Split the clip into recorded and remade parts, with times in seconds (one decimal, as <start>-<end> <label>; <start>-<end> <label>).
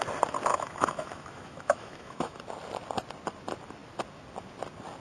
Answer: 0.0-0.5 recorded; 0.5-2.4 remade; 2.4-5.0 recorded